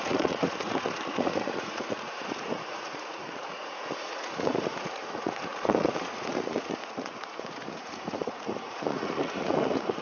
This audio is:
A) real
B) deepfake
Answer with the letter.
B